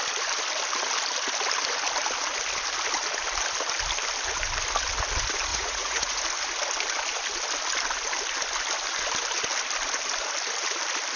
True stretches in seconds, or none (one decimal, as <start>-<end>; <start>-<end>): 0.0-5.5; 6.2-11.2